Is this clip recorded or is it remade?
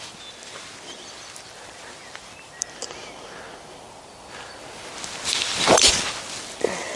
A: recorded